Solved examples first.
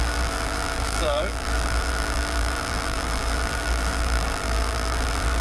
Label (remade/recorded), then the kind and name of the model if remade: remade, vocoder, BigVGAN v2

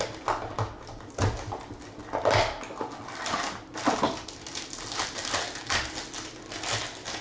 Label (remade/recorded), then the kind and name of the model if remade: recorded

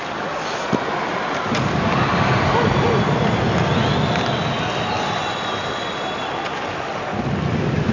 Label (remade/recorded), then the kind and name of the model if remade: recorded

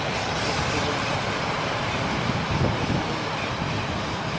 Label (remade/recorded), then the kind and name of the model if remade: recorded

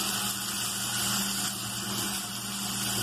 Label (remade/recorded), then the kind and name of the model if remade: recorded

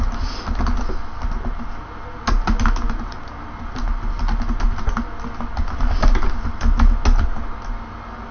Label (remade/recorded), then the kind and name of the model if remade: recorded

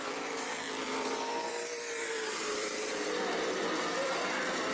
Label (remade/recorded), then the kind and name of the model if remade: remade, vocoder, BigVGAN v2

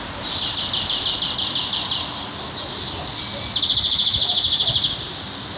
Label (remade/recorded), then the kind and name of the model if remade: recorded